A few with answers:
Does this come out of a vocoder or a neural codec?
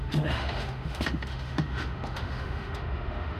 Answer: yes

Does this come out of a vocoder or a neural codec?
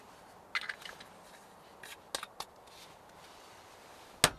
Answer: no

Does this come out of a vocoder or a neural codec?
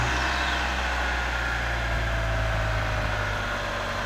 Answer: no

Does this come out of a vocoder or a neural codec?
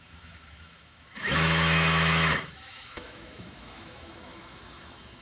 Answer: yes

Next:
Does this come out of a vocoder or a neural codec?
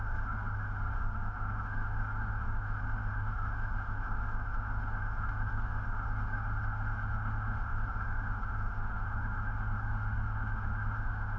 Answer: yes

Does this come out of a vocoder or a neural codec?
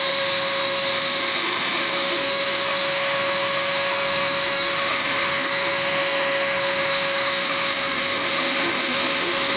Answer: yes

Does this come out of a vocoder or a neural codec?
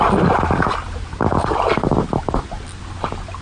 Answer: no